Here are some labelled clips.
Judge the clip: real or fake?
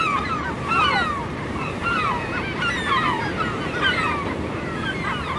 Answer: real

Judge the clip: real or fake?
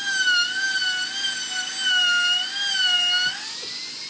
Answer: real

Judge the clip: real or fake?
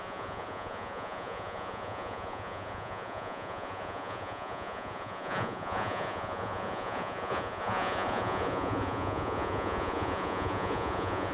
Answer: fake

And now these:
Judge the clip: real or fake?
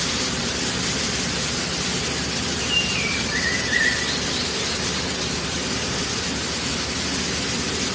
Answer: real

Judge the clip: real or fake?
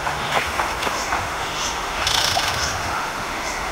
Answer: fake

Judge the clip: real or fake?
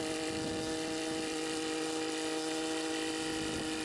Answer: real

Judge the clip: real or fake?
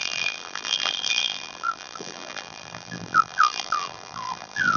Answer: fake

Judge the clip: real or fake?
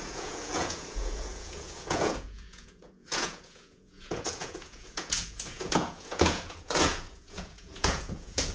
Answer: fake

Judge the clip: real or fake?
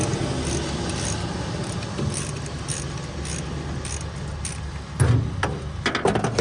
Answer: real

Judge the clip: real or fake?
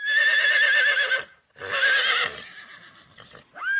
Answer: real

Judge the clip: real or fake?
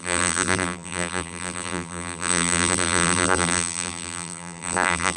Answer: fake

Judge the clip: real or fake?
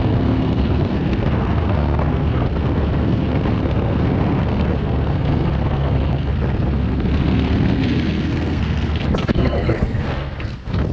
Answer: fake